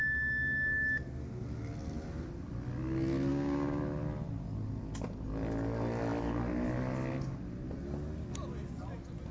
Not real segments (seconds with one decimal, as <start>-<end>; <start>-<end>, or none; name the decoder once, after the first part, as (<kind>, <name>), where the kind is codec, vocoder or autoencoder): 3.3-3.8 (codec, DAC)